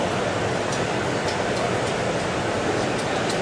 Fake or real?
real